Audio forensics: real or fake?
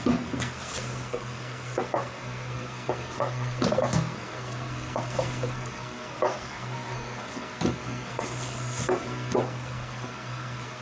fake